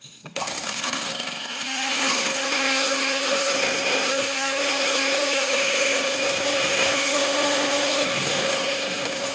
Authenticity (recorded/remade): remade